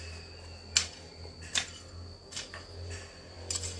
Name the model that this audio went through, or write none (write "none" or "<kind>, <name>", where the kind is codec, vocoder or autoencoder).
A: none